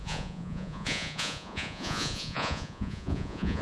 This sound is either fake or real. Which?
fake